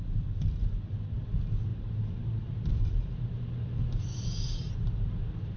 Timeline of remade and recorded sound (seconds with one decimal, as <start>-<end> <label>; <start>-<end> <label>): 0.0-1.7 recorded; 1.7-3.4 remade; 3.4-5.6 recorded